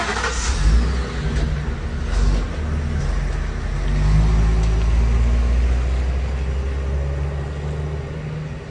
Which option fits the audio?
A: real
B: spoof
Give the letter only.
A